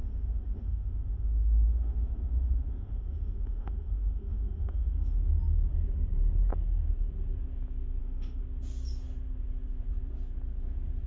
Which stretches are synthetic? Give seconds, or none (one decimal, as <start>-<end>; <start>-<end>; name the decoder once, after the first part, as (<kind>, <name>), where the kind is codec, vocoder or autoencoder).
0.0-5.2 (autoencoder, DAC-VAE); 8.0-8.4